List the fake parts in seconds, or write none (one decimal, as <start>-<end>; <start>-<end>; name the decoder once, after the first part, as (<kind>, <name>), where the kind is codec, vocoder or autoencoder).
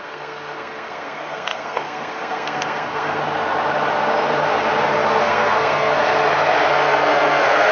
0.0-3.2 (codec, SNAC); 5.2-6.0; 6.7-7.7